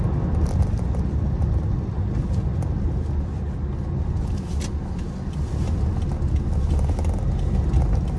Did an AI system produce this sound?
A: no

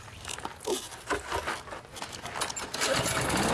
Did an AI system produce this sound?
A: no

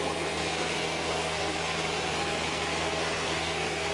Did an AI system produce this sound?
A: yes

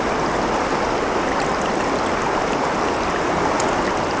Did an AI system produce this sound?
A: no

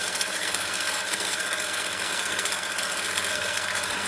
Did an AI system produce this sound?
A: yes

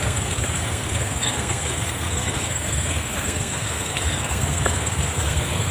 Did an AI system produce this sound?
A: yes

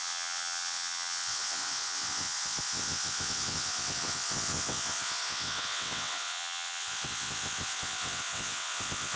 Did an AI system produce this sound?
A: yes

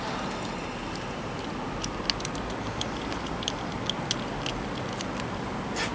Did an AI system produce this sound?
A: no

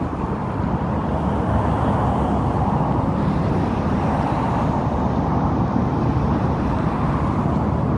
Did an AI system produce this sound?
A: no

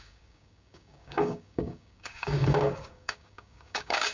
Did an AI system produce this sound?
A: yes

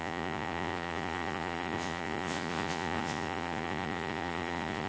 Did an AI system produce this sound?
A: yes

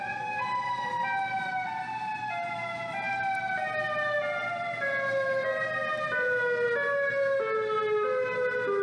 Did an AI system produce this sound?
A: no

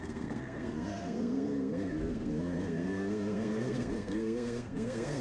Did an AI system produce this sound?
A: yes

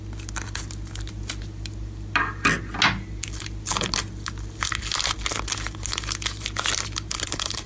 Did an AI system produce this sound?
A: no